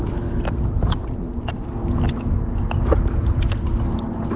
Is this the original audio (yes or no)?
yes